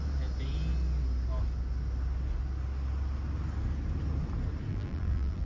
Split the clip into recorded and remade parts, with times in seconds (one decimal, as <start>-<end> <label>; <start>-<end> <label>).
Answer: 0.0-4.7 recorded; 4.7-5.5 remade